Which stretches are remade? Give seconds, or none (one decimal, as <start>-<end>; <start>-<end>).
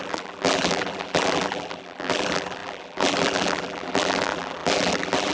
0.0-5.3